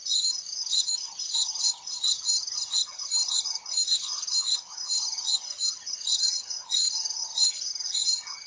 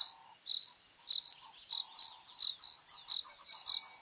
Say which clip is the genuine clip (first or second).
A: second